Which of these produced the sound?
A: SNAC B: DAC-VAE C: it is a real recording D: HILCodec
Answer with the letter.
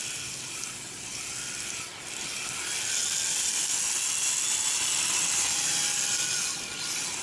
C